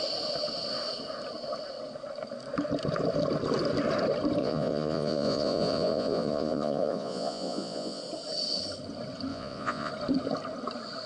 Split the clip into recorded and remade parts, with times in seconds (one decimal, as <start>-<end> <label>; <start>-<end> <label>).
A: 0.0-4.4 recorded; 4.4-8.0 remade; 8.0-9.3 recorded; 9.3-9.9 remade; 9.9-11.1 recorded